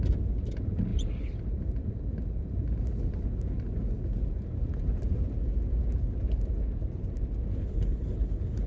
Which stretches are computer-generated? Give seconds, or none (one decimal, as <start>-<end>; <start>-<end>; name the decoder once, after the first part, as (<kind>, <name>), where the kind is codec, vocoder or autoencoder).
7.5-8.7 (codec, HILCodec)